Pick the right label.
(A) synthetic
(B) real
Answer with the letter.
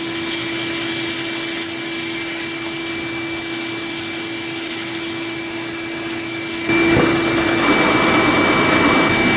B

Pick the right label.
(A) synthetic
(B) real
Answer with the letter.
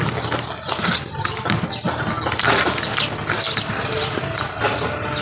B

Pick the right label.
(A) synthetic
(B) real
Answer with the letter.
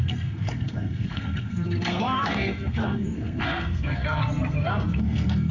A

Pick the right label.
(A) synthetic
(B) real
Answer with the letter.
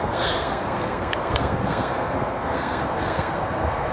A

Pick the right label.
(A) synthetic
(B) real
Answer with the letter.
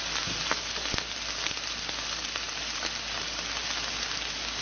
B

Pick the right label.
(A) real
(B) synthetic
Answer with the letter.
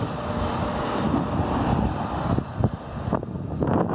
A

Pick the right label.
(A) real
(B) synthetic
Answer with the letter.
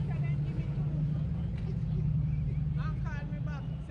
A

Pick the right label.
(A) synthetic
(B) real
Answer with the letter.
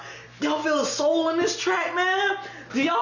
B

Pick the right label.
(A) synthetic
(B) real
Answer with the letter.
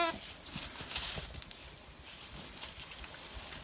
B